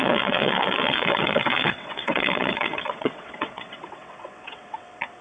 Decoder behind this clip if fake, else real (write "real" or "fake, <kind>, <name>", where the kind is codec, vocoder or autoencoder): fake, vocoder, WaveNeXt